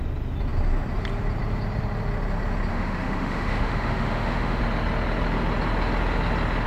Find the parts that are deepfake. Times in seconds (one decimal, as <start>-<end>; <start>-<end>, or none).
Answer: 2.7-4.6